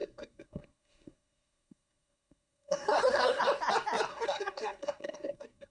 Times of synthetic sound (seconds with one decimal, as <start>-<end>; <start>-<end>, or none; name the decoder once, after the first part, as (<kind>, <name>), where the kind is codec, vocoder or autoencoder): 0.0-3.4 (codec, SNAC); 4.1-5.7